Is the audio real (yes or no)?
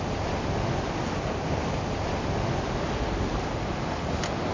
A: yes